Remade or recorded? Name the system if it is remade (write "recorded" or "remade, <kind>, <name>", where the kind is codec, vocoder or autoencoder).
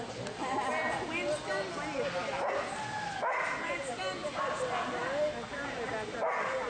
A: recorded